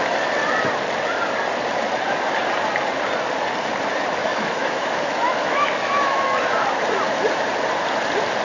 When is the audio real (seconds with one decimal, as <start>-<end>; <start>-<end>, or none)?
0.0-4.2; 6.2-8.4